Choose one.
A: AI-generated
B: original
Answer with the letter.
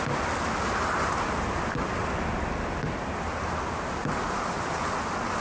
B